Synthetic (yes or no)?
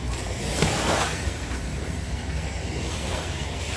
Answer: yes